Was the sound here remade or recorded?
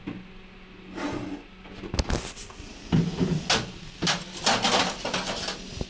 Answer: recorded